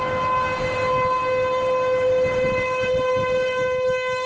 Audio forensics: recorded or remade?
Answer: recorded